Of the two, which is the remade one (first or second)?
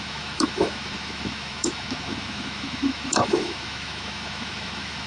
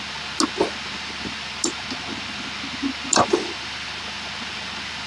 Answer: first